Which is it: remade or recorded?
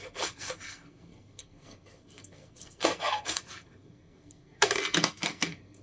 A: remade